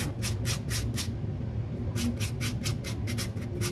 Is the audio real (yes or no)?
yes